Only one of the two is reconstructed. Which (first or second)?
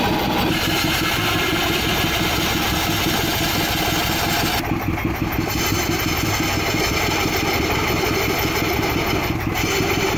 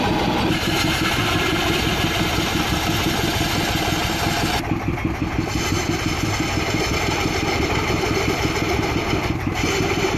second